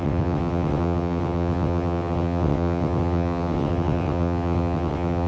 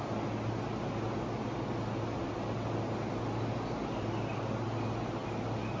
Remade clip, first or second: first